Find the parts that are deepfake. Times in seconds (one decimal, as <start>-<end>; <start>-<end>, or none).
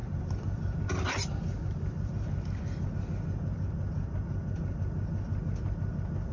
none